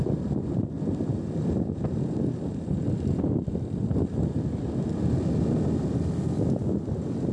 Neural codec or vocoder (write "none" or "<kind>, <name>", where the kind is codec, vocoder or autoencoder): vocoder, BigVGAN v2